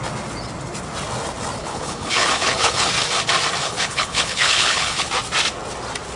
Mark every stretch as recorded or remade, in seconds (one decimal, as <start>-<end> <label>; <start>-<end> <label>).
0.0-1.6 recorded; 1.6-2.9 remade; 2.9-3.6 recorded; 3.6-5.1 remade; 5.1-6.2 recorded